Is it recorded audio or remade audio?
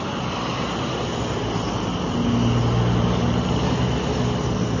recorded